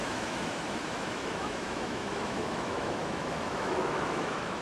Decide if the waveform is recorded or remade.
remade